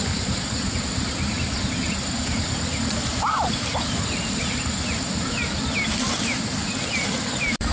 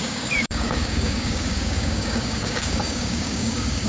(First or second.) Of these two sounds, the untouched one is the first